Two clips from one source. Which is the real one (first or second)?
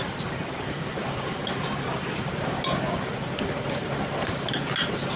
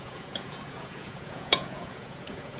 first